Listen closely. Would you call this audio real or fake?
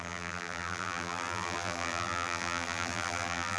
fake